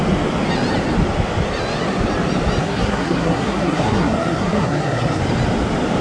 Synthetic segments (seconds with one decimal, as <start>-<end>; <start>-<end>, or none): 2.6-5.2

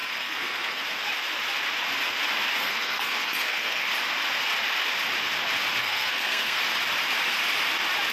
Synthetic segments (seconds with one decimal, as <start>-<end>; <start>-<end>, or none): 0.0-0.8; 2.6-3.9; 5.8-6.6